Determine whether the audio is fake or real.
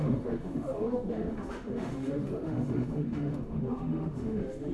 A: fake